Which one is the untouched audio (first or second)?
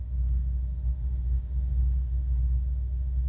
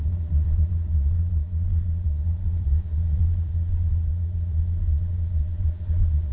first